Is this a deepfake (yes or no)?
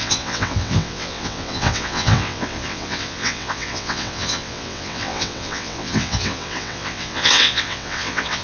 yes